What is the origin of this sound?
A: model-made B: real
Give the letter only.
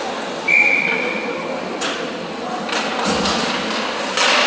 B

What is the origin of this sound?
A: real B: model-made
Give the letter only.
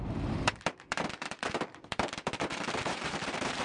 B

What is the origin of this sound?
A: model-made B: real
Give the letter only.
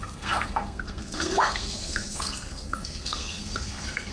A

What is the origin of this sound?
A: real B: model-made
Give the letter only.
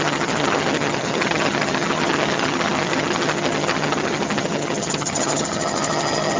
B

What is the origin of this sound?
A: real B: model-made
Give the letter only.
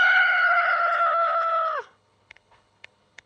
B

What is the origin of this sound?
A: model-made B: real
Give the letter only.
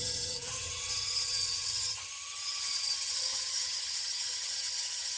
A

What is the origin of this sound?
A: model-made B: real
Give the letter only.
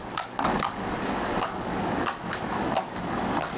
A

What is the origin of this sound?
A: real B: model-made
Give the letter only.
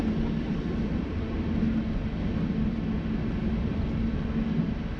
A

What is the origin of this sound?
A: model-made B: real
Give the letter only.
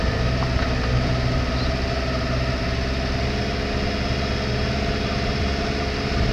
B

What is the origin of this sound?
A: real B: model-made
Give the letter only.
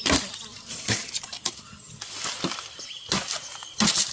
A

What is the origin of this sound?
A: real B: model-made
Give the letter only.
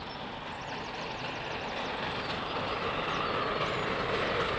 A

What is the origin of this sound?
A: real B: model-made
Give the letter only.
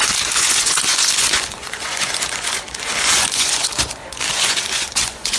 B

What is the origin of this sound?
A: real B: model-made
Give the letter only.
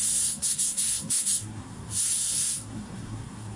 B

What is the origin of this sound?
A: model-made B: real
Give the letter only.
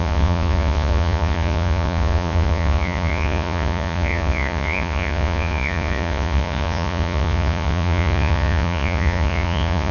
A